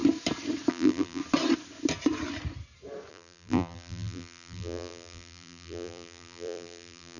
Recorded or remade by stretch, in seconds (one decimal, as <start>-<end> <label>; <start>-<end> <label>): 0.0-0.7 recorded; 0.7-1.2 remade; 1.2-3.1 recorded; 3.1-7.2 remade